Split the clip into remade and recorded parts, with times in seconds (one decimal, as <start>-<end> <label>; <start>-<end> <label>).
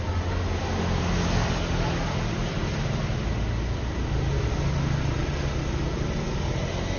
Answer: 0.0-7.0 recorded